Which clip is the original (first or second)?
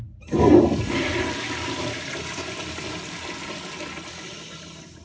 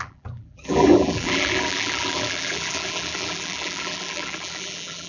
first